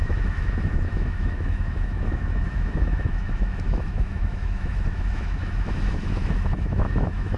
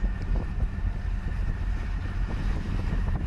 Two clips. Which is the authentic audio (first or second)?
second